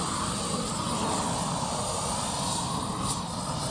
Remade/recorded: recorded